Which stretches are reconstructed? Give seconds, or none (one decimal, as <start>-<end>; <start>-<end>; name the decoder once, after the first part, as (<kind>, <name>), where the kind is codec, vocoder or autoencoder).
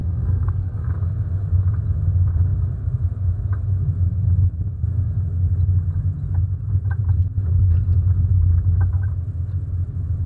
0.0-0.9 (codec, SNAC)